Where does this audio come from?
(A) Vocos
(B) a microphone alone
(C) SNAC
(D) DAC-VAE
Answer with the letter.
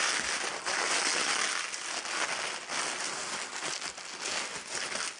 B